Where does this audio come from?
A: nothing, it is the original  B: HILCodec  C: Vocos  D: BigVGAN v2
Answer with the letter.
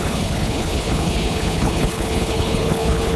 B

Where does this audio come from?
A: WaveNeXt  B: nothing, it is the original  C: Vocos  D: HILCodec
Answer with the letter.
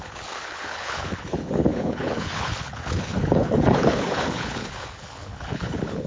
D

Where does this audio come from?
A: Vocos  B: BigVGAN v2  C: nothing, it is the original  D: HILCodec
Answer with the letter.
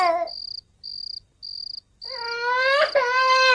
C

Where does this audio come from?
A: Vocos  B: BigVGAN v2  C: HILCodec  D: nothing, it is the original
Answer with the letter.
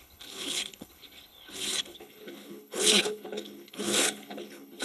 C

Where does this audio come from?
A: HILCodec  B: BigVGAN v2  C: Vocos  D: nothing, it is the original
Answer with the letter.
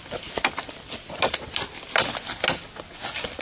D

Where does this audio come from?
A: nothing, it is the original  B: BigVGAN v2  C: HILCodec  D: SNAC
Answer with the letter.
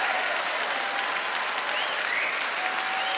A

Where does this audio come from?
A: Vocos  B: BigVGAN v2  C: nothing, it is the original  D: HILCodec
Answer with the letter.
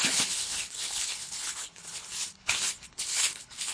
D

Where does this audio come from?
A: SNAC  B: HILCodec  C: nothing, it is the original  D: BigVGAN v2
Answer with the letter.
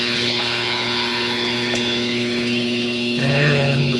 B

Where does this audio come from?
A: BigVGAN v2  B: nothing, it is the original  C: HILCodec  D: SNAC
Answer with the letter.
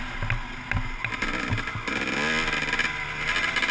B